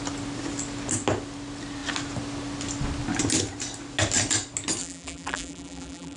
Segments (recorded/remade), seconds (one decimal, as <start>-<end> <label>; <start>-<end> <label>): 0.0-4.8 recorded; 4.8-6.2 remade

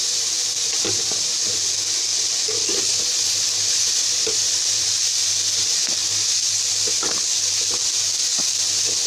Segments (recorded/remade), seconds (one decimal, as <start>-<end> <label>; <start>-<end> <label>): 0.0-2.1 recorded; 2.1-4.8 remade; 4.8-9.1 recorded

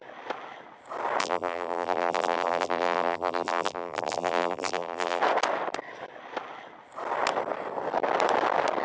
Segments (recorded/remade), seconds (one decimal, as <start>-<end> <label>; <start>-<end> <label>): 0.0-1.2 recorded; 1.2-5.2 remade; 5.2-8.8 recorded

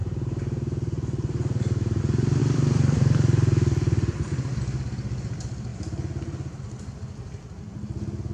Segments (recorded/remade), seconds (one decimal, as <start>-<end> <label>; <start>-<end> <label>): 0.0-2.0 remade; 2.0-2.4 recorded; 2.4-4.6 remade; 4.6-8.3 recorded

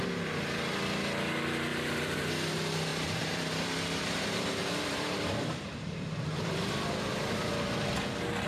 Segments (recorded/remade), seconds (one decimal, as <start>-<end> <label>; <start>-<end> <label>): 0.0-1.7 recorded; 1.7-2.3 remade; 2.3-2.9 recorded; 2.9-7.5 remade; 7.5-8.5 recorded

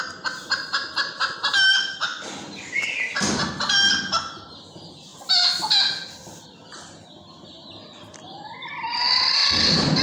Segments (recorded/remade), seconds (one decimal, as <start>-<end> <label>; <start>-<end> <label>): 0.0-9.4 recorded; 9.4-10.0 remade

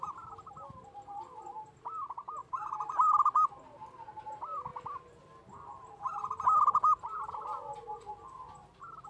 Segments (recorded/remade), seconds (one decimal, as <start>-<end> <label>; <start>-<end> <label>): 0.0-2.4 remade; 2.4-4.2 recorded; 4.2-4.7 remade; 4.7-7.3 recorded; 7.3-9.1 remade

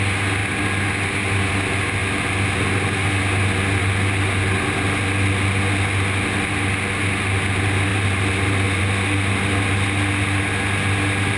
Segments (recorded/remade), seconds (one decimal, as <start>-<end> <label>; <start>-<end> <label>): 0.0-7.9 recorded; 7.9-8.8 remade; 8.8-11.4 recorded